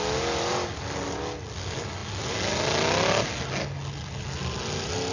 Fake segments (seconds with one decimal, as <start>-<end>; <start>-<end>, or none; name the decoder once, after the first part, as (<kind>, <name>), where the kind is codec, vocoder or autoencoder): none